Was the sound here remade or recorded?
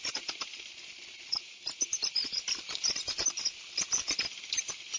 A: recorded